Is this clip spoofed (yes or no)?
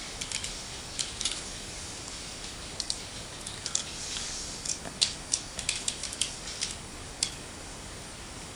yes